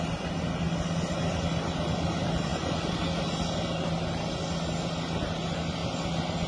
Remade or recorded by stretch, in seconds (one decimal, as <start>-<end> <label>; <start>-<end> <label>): 0.0-6.5 recorded